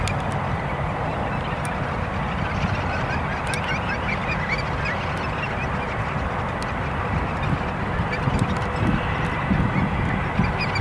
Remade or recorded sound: recorded